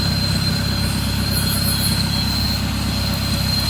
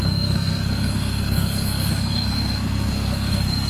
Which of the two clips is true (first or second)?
first